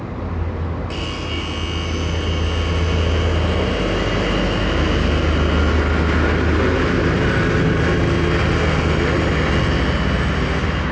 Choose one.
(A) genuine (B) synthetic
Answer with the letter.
A